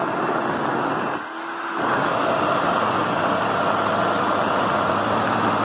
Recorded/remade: recorded